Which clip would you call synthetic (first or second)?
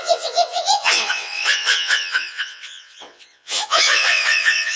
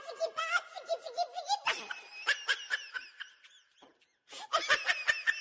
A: first